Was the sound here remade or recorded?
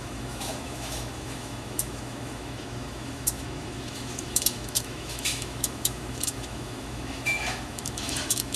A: remade